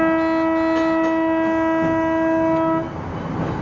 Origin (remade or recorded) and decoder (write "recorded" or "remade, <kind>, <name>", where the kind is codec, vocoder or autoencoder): recorded